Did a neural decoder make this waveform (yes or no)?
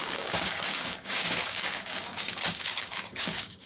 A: yes